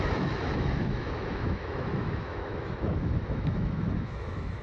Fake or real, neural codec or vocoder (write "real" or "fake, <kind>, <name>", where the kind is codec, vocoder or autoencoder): fake, autoencoder, DAC-VAE